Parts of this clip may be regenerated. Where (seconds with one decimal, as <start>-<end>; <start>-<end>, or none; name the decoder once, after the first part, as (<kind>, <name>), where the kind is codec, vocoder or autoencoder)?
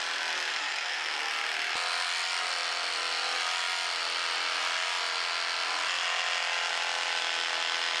0.5-1.2 (codec, SNAC)